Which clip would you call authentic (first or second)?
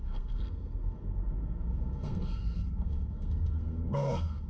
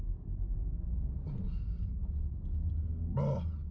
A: second